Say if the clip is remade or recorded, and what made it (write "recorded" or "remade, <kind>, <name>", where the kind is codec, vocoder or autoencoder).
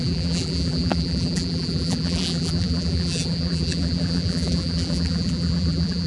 remade, vocoder, BigVGAN v2